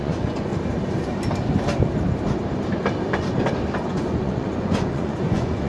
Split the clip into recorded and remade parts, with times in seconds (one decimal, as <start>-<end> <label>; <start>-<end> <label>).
0.0-0.5 remade; 0.5-3.9 recorded; 3.9-5.7 remade